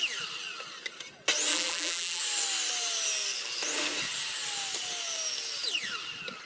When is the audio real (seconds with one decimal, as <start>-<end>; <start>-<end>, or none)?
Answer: 0.0-1.5; 2.2-6.5